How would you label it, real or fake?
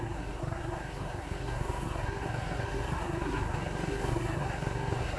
fake